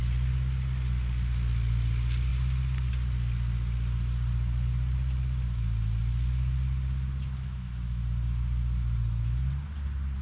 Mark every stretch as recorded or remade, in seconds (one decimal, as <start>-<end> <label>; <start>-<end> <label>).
0.0-2.3 recorded; 2.3-2.9 remade; 2.9-10.2 recorded

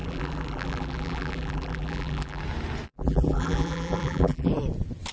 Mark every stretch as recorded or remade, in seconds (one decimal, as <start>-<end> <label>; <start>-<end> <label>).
0.0-2.4 remade; 2.4-2.9 recorded; 2.9-4.5 remade; 4.5-5.1 recorded

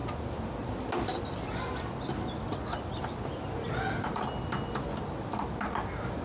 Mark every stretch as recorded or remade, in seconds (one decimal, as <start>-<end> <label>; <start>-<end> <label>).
0.0-6.2 recorded

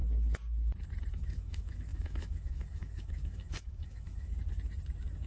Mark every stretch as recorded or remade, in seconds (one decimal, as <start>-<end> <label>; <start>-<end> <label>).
0.0-1.1 recorded; 1.1-4.3 remade; 4.3-5.3 recorded